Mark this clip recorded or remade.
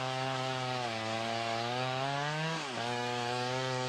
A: remade